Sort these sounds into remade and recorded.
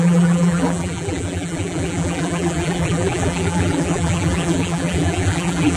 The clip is remade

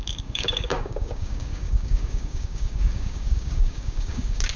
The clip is remade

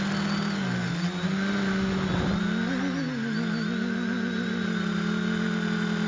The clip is recorded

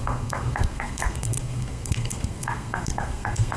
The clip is remade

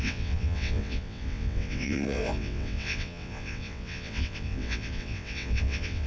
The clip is remade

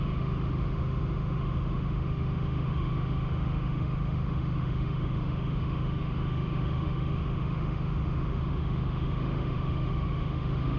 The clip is remade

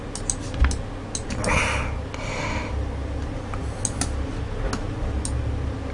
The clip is recorded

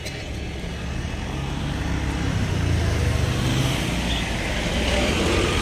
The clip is recorded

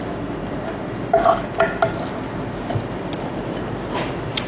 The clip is recorded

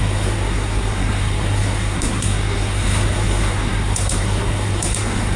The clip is remade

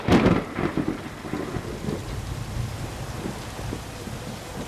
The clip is recorded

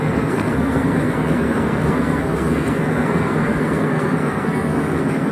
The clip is remade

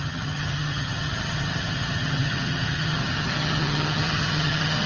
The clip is remade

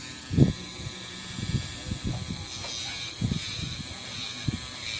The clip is recorded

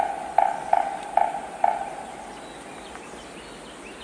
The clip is recorded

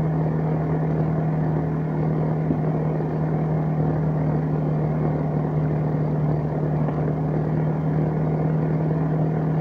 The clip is recorded